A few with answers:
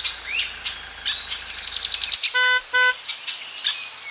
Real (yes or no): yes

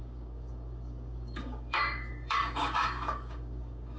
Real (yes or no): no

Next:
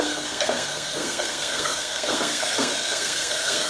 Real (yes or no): no